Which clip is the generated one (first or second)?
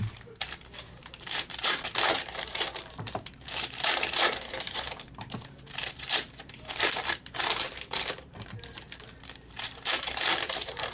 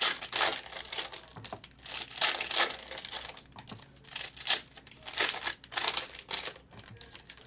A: first